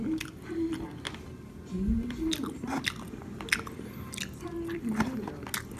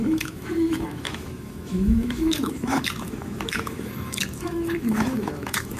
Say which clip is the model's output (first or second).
second